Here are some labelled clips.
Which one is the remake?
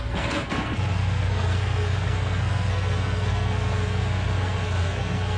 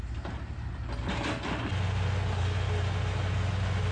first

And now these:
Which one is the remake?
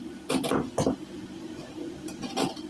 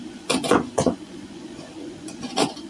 second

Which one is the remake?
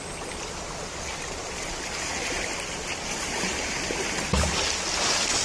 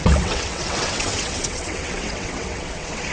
second